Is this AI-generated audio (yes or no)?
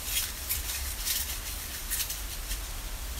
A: yes